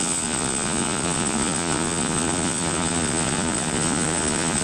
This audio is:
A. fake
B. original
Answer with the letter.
A